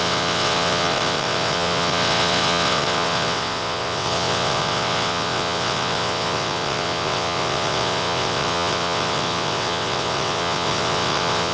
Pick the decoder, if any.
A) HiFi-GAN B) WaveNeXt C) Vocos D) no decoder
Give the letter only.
B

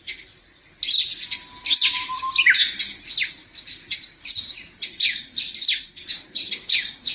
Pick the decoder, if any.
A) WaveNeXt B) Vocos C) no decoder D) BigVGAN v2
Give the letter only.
C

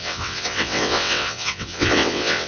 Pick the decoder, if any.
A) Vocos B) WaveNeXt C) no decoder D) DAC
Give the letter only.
B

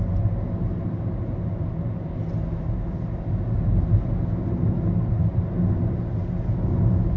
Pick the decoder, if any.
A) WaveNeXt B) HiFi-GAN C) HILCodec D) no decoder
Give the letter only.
D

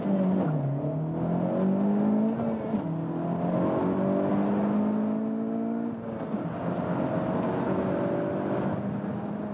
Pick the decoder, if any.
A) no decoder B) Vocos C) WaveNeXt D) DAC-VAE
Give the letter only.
A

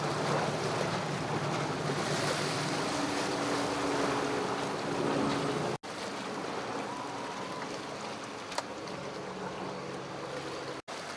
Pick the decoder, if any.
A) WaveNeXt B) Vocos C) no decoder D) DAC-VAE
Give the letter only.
C